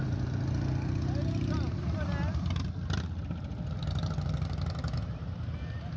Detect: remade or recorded recorded